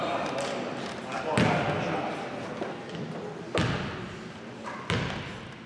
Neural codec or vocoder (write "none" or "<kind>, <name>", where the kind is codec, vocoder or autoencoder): none